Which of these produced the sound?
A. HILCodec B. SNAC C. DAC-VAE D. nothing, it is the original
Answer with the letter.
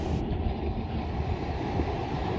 D